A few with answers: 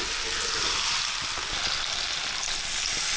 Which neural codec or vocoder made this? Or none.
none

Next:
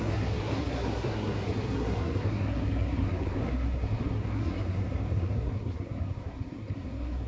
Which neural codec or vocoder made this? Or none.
codec, SNAC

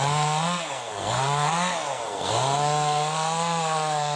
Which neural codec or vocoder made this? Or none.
codec, SNAC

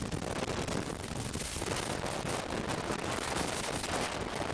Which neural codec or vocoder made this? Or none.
none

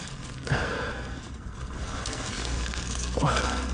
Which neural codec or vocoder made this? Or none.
codec, SNAC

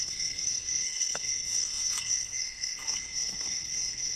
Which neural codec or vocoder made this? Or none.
codec, SNAC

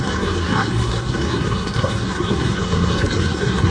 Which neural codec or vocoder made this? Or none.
codec, SNAC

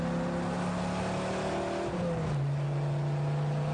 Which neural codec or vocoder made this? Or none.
none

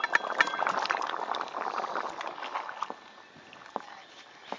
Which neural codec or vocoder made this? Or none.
none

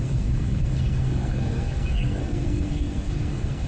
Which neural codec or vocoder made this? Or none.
codec, SNAC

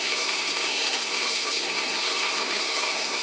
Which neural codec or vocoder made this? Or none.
codec, SNAC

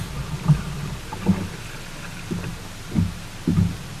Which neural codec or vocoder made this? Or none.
none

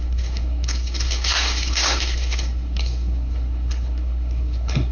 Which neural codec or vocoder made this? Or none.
codec, SNAC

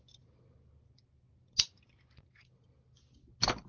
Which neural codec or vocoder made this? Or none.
none